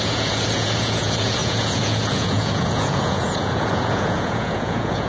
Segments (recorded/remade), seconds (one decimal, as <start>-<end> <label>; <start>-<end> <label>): 0.0-5.1 remade